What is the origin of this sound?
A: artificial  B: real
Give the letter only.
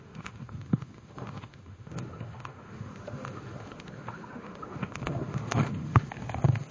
A